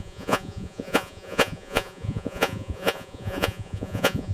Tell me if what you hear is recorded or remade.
remade